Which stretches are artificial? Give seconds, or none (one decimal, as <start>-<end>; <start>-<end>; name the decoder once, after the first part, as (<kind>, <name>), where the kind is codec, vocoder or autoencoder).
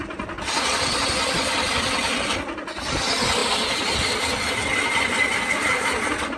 none